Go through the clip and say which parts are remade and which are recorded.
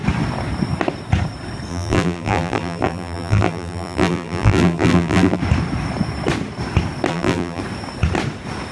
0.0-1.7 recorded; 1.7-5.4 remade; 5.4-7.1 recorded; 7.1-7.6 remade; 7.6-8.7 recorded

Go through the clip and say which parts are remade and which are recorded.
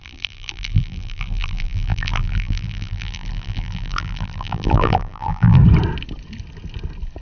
0.0-5.6 remade; 5.6-7.2 recorded